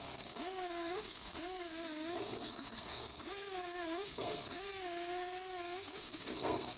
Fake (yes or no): yes